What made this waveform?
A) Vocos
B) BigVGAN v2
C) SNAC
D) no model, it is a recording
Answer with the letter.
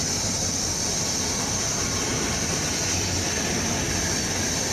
D